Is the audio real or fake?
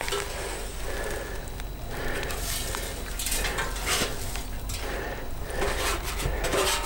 real